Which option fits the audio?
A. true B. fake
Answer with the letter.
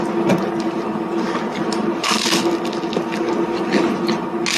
A